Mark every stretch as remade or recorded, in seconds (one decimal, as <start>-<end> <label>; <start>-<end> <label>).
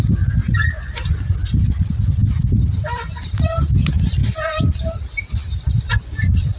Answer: 0.0-6.6 recorded